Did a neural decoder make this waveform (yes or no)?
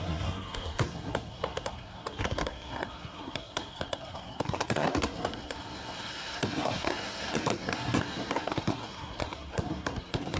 yes